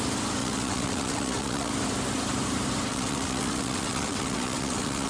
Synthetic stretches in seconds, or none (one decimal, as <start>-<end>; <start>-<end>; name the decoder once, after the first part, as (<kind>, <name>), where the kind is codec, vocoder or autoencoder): 0.4-1.7 (vocoder, WaveNeXt); 2.9-5.1